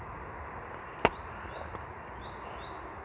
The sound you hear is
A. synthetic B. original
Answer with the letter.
B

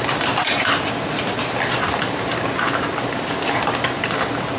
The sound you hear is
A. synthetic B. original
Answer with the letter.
B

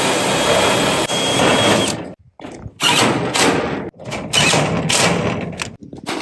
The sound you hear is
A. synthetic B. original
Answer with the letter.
B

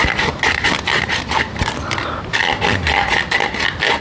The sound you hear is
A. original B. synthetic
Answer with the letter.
A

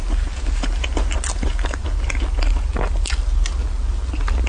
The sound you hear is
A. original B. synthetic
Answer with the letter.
A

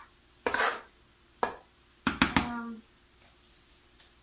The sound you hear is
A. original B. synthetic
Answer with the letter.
A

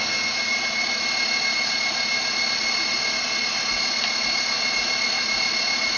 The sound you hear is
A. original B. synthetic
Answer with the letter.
A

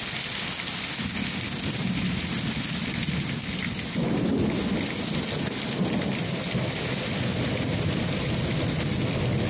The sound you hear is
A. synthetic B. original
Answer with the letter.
B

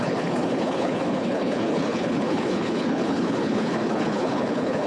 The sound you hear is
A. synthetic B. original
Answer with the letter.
A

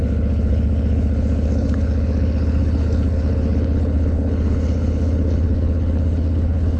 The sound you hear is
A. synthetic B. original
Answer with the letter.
A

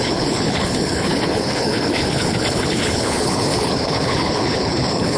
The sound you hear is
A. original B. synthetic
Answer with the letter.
B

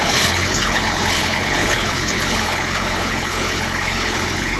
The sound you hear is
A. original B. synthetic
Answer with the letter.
B